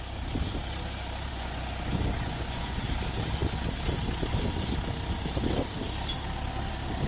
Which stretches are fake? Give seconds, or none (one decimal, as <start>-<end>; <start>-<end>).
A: 1.3-2.8